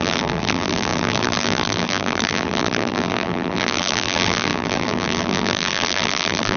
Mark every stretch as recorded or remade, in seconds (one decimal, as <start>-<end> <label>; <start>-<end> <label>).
0.0-6.6 remade